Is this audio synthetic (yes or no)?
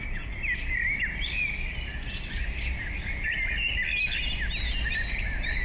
no